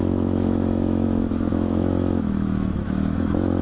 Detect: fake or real fake